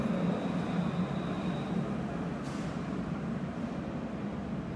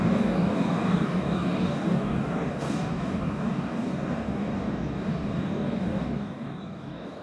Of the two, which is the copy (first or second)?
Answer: second